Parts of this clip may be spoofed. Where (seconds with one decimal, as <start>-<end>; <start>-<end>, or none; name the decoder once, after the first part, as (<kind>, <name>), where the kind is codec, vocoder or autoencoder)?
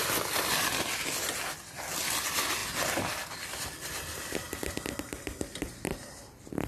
none